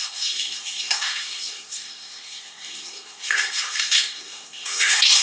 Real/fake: fake